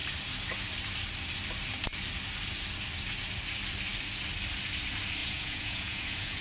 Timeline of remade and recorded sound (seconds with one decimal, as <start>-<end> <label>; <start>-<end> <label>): 0.0-5.2 recorded; 5.2-6.4 remade